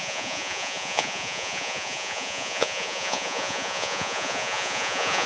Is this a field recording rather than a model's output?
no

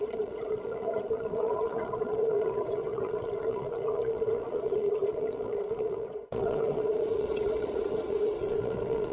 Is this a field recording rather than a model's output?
no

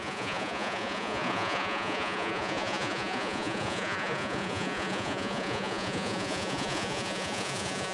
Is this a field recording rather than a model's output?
no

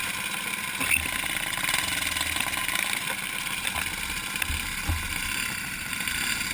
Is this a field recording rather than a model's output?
yes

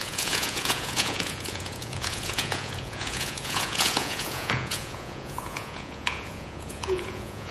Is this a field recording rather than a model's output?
no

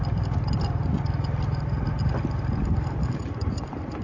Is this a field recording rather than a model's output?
yes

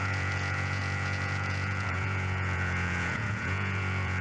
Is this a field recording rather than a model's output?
no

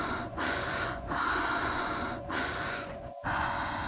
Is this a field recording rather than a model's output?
no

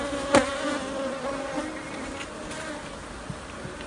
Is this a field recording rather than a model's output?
yes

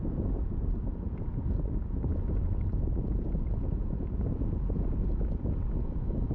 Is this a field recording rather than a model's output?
no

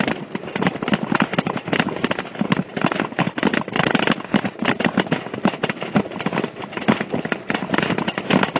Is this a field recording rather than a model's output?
yes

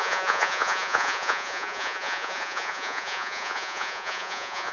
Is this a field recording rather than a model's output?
no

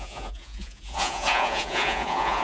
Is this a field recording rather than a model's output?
no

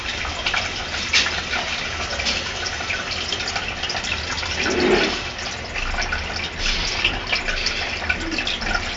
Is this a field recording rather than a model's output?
yes